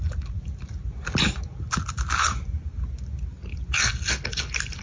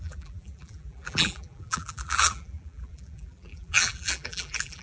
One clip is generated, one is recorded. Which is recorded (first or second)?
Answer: first